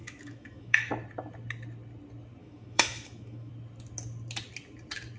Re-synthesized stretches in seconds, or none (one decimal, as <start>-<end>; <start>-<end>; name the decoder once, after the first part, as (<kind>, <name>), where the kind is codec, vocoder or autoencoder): 0.0-0.9 (autoencoder, DAC-VAE); 2.4-3.5